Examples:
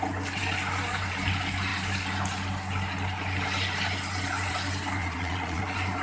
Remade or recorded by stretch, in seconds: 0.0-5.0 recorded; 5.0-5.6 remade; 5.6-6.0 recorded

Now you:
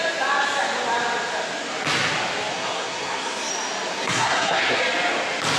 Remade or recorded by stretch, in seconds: 0.0-2.5 recorded; 2.5-3.5 remade; 3.5-3.9 recorded; 3.9-4.8 remade; 4.8-5.6 recorded

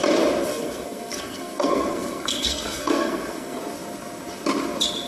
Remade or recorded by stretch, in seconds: 0.0-0.5 recorded; 0.5-3.6 remade; 3.6-5.1 recorded

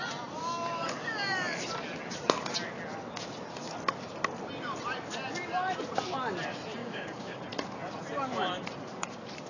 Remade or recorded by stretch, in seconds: 0.0-6.8 recorded; 6.8-7.4 remade; 7.4-9.5 recorded

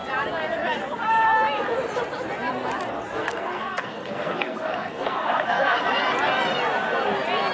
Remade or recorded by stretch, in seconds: 0.0-3.2 recorded; 3.2-5.8 remade; 5.8-7.5 recorded

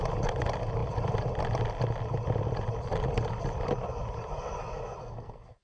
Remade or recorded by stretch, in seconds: 0.0-5.0 recorded; 5.0-5.6 remade

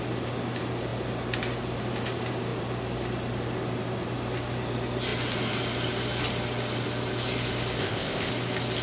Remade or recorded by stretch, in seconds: 0.0-7.8 recorded; 7.8-8.3 remade; 8.3-8.8 recorded

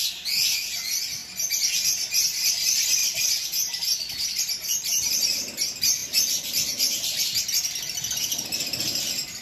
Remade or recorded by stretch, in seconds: 0.0-9.4 recorded